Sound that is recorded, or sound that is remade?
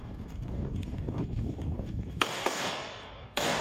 remade